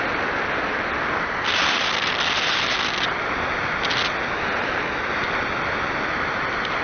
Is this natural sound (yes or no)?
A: yes